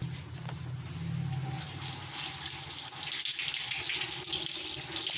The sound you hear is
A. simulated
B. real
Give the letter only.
B